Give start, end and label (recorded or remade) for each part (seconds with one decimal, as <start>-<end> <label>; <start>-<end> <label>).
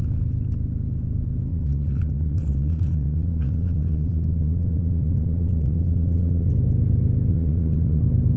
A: 0.0-1.5 recorded; 1.5-6.5 remade; 6.5-7.3 recorded; 7.3-8.0 remade; 8.0-8.4 recorded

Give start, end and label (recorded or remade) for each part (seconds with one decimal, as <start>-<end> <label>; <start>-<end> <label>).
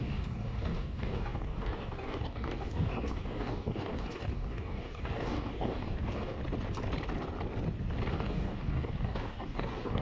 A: 0.0-6.4 remade; 6.4-8.1 recorded; 8.1-10.0 remade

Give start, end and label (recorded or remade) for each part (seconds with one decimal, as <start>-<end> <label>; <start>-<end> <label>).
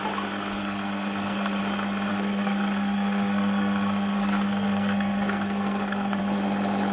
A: 0.0-0.6 recorded; 0.6-1.6 remade; 1.6-2.1 recorded; 2.1-6.2 remade; 6.2-6.9 recorded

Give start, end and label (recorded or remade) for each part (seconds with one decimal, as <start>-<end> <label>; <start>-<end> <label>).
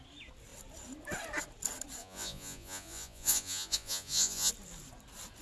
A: 0.0-2.0 recorded; 2.0-4.5 remade; 4.5-5.4 recorded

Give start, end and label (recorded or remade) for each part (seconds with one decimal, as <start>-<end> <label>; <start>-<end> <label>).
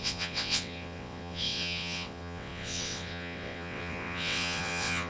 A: 0.0-5.1 remade